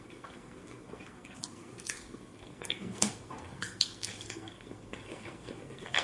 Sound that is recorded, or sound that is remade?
remade